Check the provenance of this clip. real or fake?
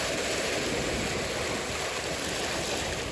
real